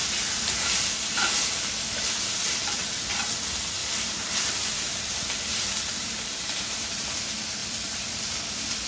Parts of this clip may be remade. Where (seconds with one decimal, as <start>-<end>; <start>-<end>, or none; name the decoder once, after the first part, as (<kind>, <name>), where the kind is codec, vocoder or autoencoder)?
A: 0.0-3.0 (vocoder, BigVGAN v2); 3.8-7.1; 7.6-8.4